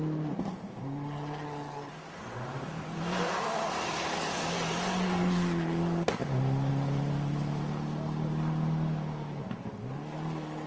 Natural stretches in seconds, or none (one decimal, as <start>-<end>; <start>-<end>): 0.0-10.7